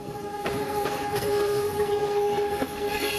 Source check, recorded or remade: remade